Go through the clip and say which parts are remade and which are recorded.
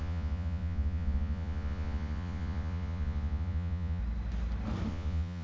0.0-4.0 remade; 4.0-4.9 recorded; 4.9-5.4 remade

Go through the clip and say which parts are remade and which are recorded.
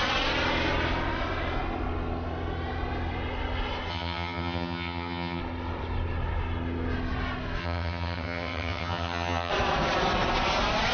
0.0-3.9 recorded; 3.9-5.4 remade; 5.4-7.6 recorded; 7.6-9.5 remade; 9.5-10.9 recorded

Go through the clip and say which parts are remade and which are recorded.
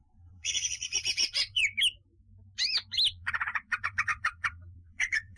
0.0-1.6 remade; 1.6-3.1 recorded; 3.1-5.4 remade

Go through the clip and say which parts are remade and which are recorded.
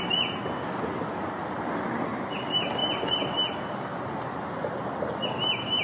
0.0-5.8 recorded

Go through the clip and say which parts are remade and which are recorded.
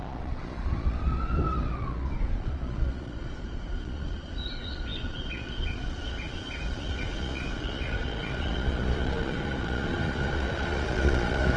0.0-11.6 remade